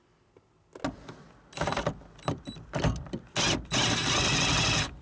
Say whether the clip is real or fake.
real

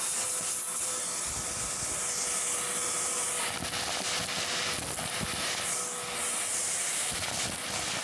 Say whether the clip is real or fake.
real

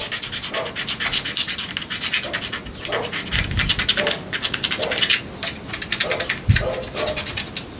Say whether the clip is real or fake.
real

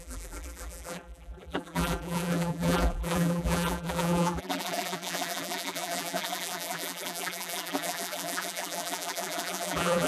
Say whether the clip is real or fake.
fake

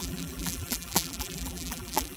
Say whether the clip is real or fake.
fake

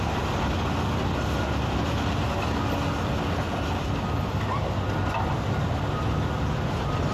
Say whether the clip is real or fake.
real